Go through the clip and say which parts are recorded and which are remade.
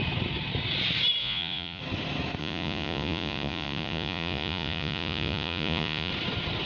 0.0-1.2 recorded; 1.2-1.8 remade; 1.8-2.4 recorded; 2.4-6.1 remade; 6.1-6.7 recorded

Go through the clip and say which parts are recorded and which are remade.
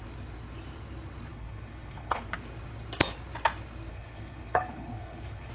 0.0-1.3 recorded; 1.3-2.2 remade; 2.2-3.9 recorded; 3.9-5.5 remade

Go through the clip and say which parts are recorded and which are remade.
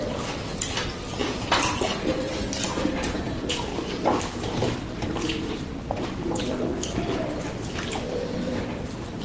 0.0-0.5 remade; 0.5-2.4 recorded; 2.4-3.7 remade; 3.7-4.5 recorded; 4.5-9.2 remade